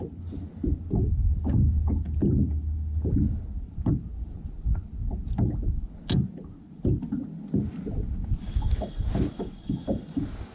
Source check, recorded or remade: recorded